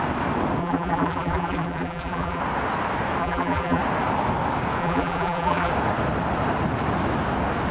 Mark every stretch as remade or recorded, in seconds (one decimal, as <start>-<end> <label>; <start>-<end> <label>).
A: 0.0-0.6 recorded; 0.6-2.4 remade; 2.4-3.2 recorded; 3.2-3.8 remade; 3.8-4.8 recorded; 4.8-5.7 remade; 5.7-7.7 recorded